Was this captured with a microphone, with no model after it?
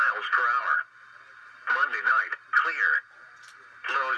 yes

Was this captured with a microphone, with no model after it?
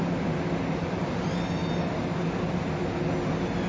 yes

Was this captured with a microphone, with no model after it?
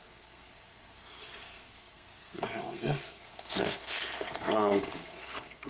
no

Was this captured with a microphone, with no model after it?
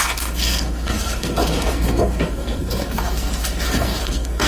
no